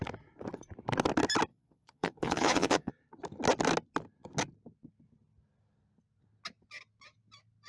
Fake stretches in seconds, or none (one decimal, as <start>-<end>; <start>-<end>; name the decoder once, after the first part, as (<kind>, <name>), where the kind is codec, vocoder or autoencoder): 1.5-2.9 (vocoder, Vocos)